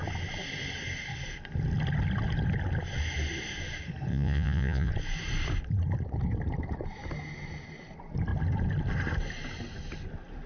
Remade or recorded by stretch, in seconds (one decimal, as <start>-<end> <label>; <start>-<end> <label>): 0.0-4.1 recorded; 4.1-4.9 remade; 4.9-10.5 recorded